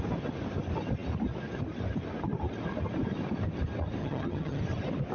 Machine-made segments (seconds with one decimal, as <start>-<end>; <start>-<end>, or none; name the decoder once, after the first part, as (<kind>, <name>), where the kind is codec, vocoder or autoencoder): 4.0-4.6 (vocoder, HiFi-GAN)